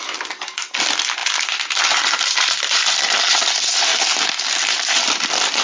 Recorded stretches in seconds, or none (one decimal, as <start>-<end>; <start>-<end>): 0.0-1.2; 2.9-5.6